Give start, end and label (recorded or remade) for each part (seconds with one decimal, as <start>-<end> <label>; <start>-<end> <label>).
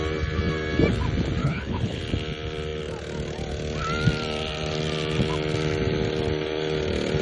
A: 0.0-1.4 recorded; 1.4-2.0 remade; 2.0-7.2 recorded